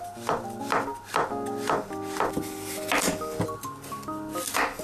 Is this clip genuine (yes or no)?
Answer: yes